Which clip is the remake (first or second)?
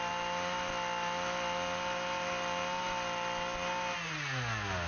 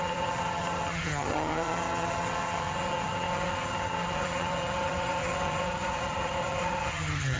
second